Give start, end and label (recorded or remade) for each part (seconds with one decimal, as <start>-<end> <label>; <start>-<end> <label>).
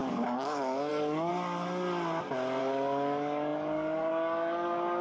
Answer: 0.0-1.3 remade; 1.3-2.6 recorded; 2.6-5.0 remade